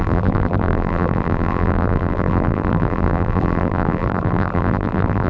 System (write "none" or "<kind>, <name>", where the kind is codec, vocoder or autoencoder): vocoder, BigVGAN v2